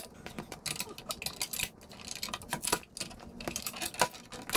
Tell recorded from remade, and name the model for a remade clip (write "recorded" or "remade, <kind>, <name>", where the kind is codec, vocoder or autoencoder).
recorded